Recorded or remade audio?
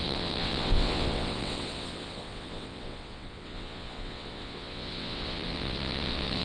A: remade